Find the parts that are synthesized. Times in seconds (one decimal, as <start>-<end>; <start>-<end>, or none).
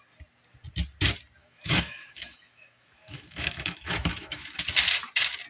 1.4-4.6